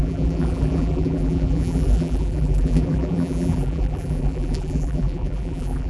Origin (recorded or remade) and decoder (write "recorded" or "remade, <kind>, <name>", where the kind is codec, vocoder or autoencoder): remade, vocoder, BigVGAN v2